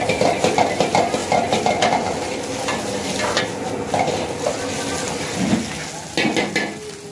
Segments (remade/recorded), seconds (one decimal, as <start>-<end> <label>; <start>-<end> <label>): 0.0-7.1 recorded